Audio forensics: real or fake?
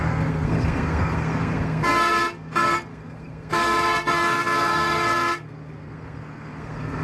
fake